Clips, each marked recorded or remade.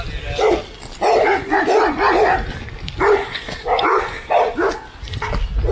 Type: recorded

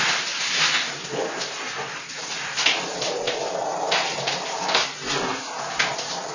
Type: recorded